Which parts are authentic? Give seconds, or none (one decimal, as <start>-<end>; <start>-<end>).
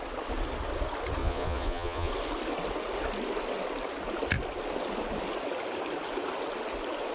0.0-1.2; 2.1-7.1